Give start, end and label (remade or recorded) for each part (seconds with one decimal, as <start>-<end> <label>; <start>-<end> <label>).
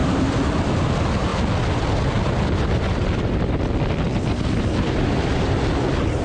0.0-1.3 remade; 1.3-5.0 recorded; 5.0-6.2 remade